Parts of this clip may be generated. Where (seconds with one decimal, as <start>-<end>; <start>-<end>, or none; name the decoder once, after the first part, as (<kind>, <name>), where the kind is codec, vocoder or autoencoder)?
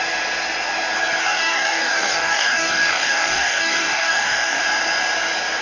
1.2-4.6 (codec, DAC)